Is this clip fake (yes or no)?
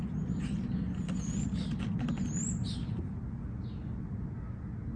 no